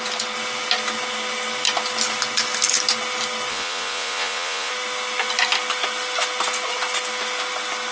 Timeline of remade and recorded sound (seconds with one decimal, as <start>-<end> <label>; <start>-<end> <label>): 0.0-3.5 recorded; 3.5-4.7 remade; 4.7-7.9 recorded